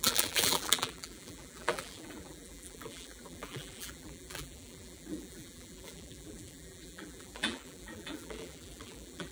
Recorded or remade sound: remade